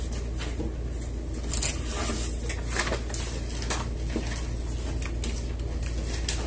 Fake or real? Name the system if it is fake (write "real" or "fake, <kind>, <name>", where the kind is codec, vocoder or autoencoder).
real